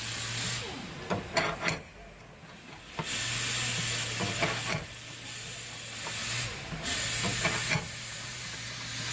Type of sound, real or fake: real